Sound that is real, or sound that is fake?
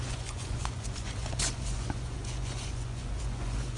fake